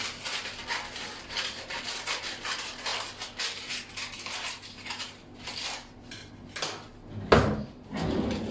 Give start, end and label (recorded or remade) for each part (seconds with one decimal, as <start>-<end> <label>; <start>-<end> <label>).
0.0-8.5 recorded